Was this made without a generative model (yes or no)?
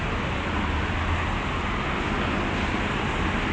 yes